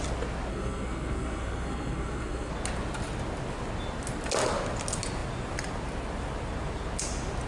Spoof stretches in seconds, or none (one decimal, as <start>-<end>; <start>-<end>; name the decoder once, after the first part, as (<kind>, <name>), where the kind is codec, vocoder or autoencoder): 0.5-2.5 (codec, SNAC)